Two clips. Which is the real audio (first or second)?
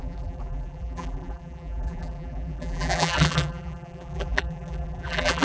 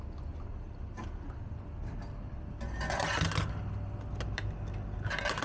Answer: second